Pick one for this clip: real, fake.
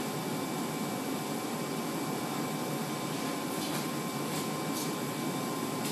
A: fake